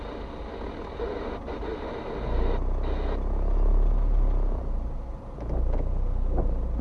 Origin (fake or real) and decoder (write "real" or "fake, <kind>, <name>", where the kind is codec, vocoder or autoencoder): real